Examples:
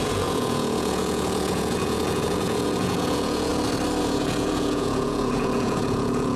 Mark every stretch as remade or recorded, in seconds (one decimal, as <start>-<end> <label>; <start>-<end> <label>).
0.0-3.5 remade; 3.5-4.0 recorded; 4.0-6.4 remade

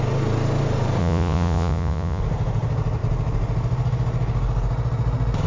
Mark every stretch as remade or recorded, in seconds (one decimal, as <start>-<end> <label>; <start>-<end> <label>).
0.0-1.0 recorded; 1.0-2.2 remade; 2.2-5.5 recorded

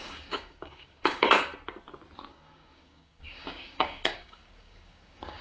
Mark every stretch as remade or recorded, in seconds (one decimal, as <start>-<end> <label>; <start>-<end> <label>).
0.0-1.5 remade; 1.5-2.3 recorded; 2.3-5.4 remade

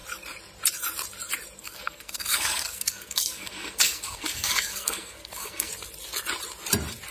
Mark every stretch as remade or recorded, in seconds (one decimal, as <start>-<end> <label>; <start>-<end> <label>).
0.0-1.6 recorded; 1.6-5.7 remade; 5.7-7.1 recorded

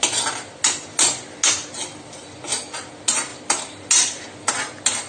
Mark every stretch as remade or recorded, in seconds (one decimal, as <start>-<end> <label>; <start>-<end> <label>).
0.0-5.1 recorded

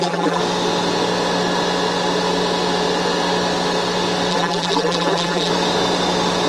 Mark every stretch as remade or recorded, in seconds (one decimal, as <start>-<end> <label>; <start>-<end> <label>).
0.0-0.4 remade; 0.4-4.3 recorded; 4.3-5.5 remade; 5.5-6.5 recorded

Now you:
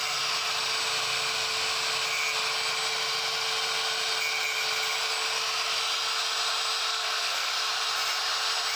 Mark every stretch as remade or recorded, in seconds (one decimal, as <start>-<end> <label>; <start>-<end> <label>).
0.0-6.9 recorded; 6.9-7.5 remade; 7.5-8.8 recorded